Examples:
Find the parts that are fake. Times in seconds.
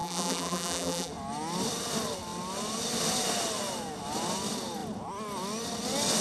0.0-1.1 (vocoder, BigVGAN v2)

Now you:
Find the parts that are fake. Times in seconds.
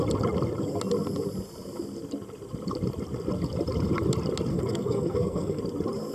4.5-5.6 (codec, SNAC)